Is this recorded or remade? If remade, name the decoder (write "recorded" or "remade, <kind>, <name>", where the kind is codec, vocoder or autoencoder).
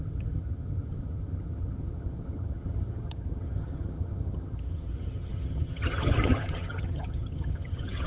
remade, vocoder, HiFi-GAN